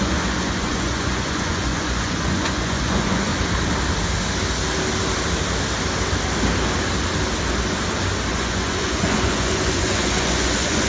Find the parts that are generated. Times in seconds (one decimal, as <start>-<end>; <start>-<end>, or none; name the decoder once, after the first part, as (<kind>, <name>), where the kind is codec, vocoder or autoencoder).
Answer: 0.0-3.3 (vocoder, Vocos); 8.3-10.9